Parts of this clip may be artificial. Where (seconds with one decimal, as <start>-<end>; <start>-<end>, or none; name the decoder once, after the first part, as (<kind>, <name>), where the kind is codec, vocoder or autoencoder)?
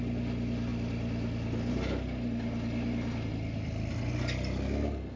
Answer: none